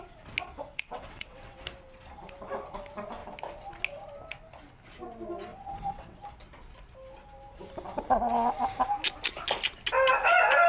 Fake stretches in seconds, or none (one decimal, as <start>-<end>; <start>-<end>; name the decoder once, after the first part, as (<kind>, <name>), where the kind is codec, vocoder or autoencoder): 0.7-1.6 (vocoder, WaveNeXt); 5.5-6.2